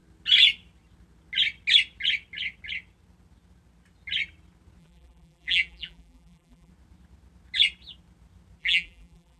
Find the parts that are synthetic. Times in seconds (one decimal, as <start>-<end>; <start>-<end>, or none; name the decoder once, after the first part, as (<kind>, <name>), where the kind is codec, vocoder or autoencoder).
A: 4.8-6.7 (vocoder, BigVGAN v2); 8.6-9.4

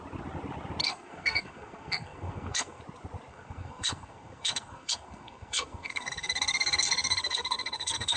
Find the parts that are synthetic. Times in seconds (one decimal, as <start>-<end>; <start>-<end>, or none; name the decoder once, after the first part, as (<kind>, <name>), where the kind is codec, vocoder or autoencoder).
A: 0.8-2.8 (codec, SNAC); 3.3-8.2